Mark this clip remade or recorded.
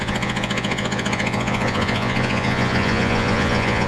remade